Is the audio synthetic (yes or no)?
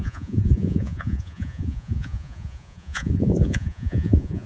yes